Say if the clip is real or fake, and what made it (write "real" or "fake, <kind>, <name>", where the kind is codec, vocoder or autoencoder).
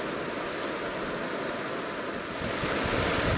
real